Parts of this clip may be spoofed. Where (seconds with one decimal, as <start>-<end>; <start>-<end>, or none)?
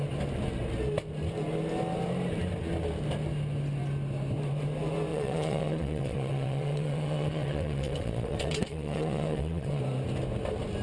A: 5.1-9.8